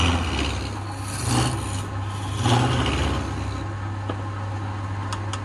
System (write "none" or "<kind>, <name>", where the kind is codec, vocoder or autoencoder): none